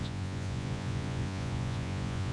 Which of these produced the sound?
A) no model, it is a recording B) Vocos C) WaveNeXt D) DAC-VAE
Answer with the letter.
B